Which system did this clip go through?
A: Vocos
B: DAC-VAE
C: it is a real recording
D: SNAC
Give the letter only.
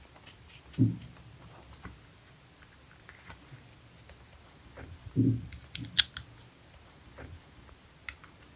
C